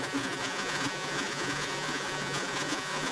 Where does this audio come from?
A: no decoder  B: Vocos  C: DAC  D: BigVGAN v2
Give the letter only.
B